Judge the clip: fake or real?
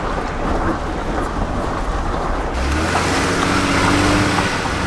real